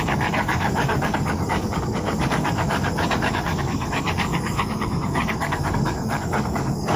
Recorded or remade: remade